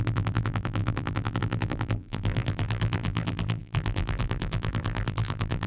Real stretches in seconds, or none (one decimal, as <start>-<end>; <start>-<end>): none